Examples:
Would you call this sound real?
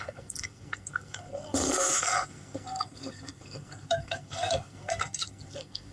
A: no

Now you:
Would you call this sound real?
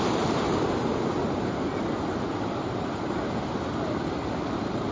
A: yes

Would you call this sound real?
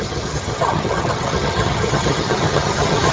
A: no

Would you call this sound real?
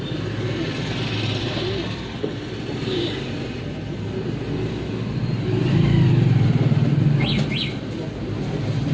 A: yes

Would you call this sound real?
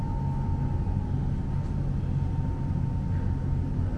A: yes